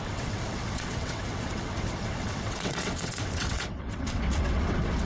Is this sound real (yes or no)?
no